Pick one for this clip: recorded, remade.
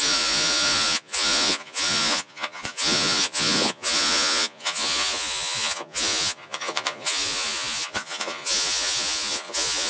remade